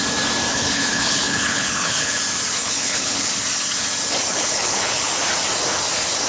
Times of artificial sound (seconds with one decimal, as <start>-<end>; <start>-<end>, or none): 0.5-2.2; 2.6-3.3; 4.3-5.1